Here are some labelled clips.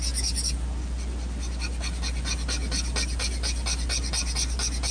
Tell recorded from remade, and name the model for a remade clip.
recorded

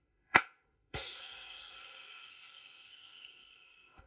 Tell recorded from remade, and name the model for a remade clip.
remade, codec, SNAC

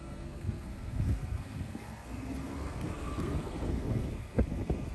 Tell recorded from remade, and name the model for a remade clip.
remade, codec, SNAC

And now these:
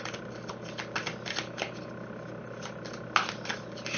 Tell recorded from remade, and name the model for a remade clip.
recorded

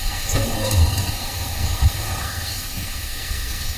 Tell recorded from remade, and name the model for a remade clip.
remade, codec, SNAC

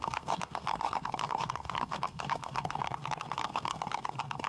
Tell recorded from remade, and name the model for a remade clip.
remade, codec, SNAC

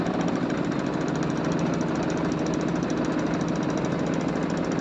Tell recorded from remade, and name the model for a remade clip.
recorded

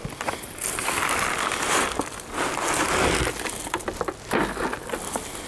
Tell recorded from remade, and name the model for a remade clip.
recorded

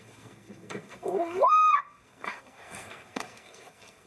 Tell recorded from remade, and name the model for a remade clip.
remade, codec, SNAC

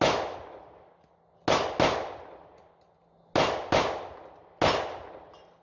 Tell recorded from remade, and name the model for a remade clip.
recorded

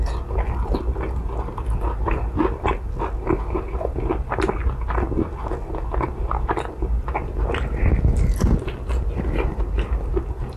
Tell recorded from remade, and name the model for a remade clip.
recorded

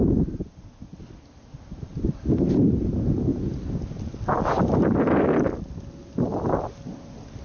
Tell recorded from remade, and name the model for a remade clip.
recorded